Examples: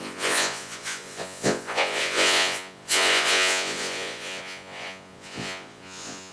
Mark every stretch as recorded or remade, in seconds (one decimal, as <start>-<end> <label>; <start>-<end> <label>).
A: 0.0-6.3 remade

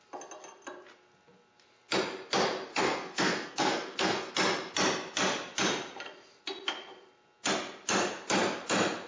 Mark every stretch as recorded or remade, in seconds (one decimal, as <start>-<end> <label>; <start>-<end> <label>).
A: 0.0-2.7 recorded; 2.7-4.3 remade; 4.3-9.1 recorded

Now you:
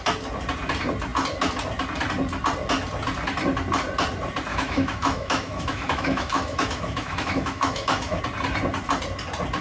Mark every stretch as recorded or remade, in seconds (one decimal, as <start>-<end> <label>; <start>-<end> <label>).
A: 0.0-4.5 recorded; 4.5-8.2 remade; 8.2-9.6 recorded